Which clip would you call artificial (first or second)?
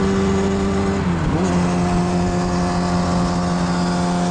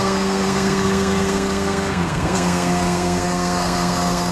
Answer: second